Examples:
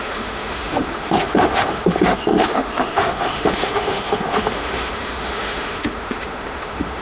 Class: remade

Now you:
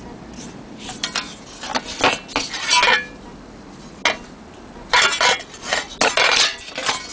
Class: recorded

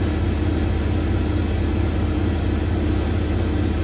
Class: recorded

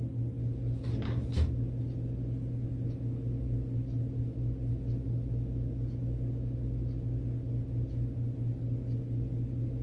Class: recorded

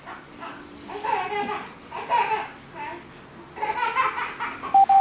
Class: recorded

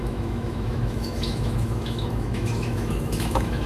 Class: remade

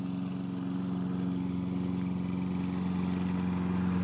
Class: recorded